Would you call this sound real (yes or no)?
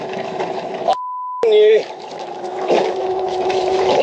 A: no